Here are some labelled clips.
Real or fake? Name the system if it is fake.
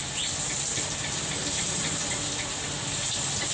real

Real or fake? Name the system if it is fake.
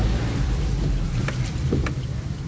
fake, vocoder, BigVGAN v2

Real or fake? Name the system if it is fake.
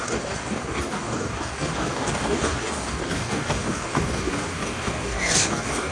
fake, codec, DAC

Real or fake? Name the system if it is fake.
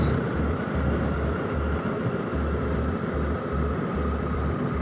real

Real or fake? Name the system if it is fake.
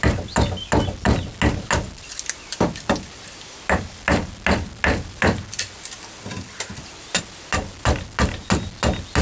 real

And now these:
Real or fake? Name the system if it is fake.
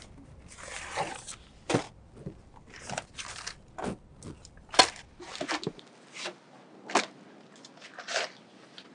real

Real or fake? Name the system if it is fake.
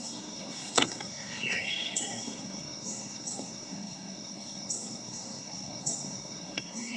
fake, codec, SNAC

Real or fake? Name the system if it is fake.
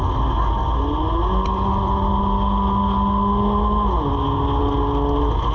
real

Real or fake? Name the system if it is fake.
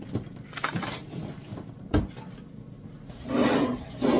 real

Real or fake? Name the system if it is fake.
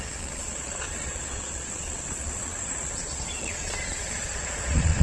fake, vocoder, Vocos